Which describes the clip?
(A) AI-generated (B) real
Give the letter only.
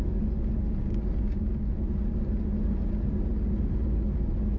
B